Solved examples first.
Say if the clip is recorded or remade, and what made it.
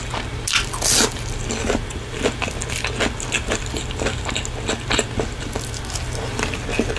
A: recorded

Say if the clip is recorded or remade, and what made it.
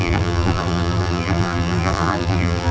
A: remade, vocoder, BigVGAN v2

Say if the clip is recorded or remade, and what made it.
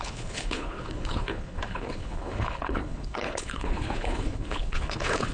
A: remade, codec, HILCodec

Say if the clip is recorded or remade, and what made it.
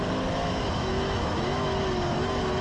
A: remade, autoencoder, DAC-VAE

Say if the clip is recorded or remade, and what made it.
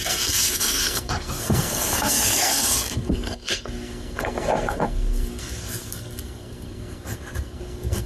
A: remade, codec, SNAC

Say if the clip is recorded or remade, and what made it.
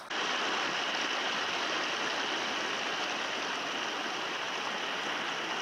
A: recorded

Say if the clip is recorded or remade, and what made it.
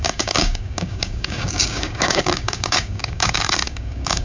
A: remade, codec, DAC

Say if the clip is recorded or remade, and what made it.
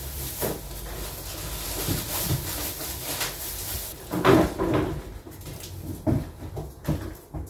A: recorded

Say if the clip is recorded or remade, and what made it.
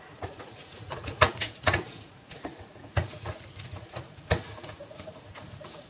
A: remade, vocoder, Vocos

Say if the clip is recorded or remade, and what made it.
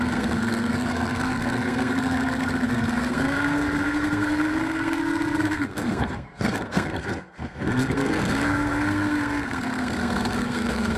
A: remade, codec, SNAC